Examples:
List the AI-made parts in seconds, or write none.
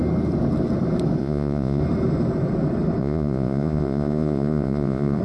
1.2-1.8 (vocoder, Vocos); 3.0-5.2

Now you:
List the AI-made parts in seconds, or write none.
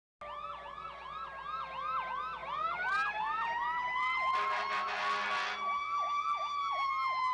none